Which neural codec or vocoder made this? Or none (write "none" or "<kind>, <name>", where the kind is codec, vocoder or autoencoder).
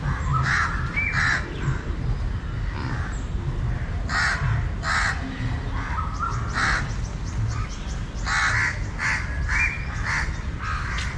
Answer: none